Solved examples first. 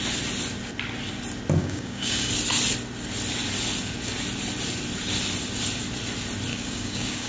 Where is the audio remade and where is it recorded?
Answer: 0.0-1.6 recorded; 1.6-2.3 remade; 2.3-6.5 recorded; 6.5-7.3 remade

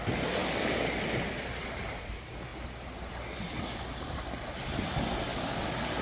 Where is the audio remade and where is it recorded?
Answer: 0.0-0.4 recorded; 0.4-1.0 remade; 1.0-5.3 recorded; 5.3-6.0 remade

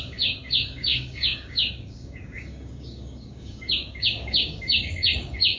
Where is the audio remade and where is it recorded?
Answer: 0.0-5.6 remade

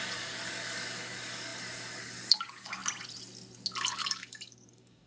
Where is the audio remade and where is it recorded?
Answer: 0.0-2.8 remade; 2.8-3.9 recorded; 3.9-5.1 remade

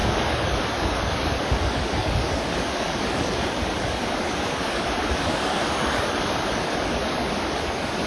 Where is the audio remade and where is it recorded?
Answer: 0.0-8.1 remade

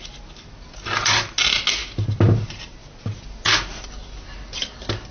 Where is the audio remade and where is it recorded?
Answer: 0.0-5.1 recorded

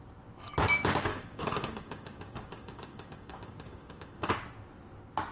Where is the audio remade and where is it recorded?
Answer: 0.0-1.1 recorded; 1.1-4.3 remade; 4.3-5.3 recorded

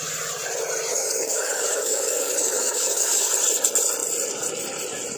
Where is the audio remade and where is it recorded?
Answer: 0.0-0.9 recorded; 0.9-3.3 remade; 3.3-5.2 recorded